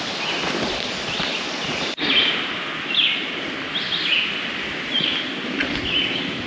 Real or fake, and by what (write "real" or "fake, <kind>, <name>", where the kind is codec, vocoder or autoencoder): real